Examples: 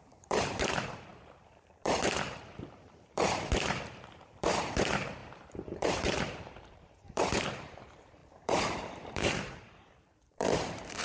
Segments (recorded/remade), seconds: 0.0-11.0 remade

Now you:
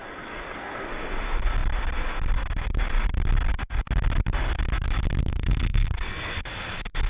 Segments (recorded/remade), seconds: 0.0-0.9 remade; 0.9-5.3 recorded; 5.3-6.4 remade; 6.4-7.1 recorded

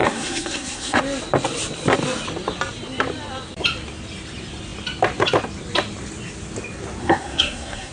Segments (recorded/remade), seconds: 0.0-1.0 remade; 1.0-7.0 recorded; 7.0-7.9 remade

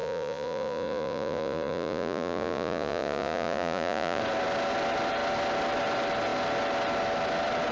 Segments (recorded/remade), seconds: 0.0-4.2 remade; 4.2-7.7 recorded

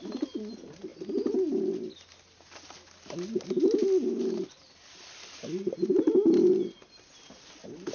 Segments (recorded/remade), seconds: 0.0-7.9 recorded